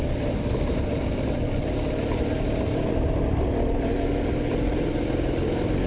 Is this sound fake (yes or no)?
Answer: no